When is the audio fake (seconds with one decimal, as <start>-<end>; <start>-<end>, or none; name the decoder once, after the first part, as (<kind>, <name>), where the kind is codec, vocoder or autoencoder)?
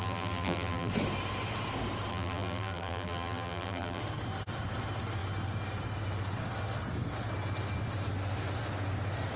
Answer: 0.0-0.9 (vocoder, BigVGAN v2); 2.1-4.0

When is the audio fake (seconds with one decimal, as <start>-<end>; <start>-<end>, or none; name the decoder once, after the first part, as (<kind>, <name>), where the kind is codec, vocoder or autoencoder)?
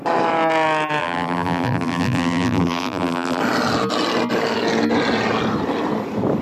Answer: 1.0-3.4 (vocoder, BigVGAN v2)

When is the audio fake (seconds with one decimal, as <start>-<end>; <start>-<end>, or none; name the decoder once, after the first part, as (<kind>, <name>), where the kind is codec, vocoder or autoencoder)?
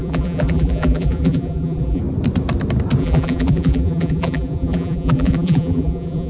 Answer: 0.0-2.0 (vocoder, BigVGAN v2); 3.0-6.3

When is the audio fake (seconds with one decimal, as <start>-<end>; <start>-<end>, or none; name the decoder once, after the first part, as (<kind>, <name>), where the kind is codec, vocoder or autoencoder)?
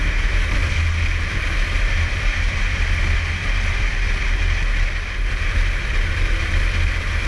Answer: 0.0-4.4 (vocoder, BigVGAN v2); 5.3-7.3